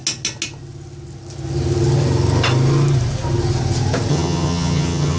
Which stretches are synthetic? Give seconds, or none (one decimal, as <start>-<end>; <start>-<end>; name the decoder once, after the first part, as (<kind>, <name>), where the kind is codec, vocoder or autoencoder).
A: 4.1-5.2 (vocoder, HiFi-GAN)